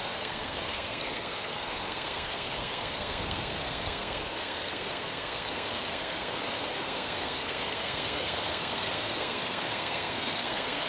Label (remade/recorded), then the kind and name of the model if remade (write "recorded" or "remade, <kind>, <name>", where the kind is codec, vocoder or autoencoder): remade, codec, SNAC